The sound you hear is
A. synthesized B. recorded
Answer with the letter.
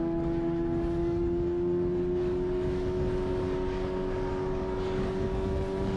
A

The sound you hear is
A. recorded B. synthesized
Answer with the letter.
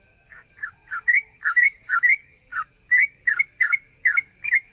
B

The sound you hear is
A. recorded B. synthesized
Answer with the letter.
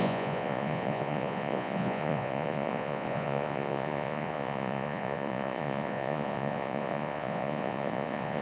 B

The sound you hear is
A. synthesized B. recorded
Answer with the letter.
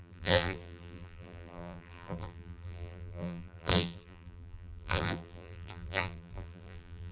A